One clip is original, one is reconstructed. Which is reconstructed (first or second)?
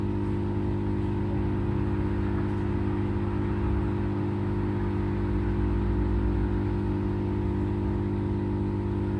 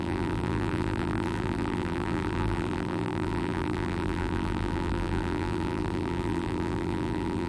second